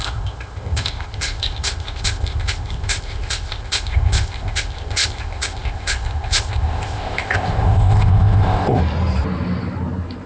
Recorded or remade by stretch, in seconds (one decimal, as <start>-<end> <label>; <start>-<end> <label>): 0.0-8.8 remade; 8.8-10.3 recorded